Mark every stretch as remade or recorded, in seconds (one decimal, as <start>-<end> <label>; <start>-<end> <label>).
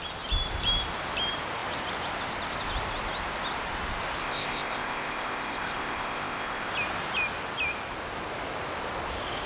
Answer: 0.0-4.2 recorded; 4.2-6.7 remade; 6.7-9.5 recorded